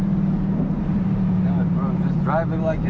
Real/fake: fake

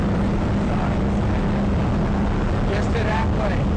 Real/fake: real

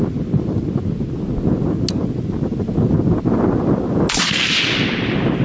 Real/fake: real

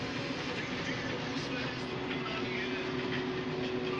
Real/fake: real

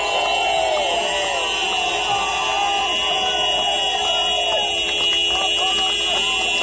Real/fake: real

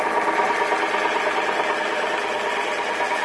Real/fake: real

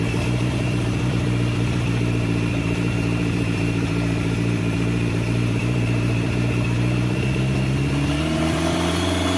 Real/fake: fake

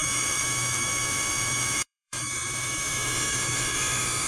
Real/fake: fake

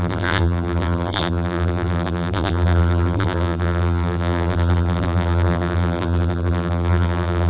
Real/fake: fake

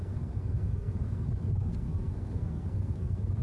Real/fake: fake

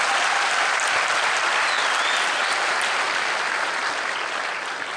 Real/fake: real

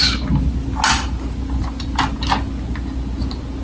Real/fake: real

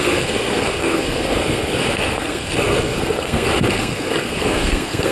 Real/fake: fake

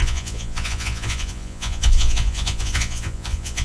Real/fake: fake